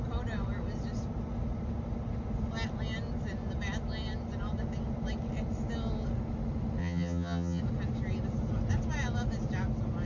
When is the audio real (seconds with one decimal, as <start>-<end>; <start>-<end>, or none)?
0.0-6.8; 7.6-10.1